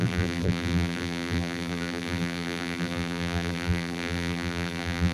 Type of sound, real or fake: fake